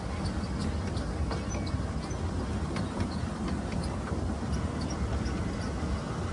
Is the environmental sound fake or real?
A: real